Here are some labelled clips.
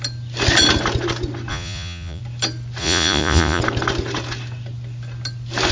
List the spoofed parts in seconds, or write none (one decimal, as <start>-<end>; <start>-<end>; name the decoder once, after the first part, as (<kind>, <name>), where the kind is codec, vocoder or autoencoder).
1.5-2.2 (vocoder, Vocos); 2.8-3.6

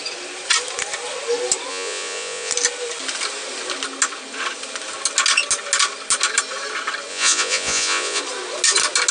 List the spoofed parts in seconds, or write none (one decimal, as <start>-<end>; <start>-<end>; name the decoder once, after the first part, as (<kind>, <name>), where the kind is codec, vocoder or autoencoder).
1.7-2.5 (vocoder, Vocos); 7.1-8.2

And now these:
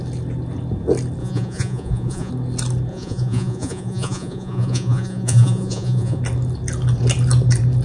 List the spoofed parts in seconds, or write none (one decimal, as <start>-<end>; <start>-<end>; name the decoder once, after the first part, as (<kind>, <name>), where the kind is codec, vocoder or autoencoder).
1.2-2.3 (vocoder, Vocos); 2.9-6.2

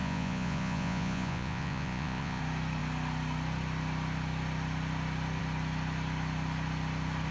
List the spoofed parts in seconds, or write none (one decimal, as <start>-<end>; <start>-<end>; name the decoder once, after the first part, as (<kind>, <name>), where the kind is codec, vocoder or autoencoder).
0.0-2.4 (vocoder, Vocos)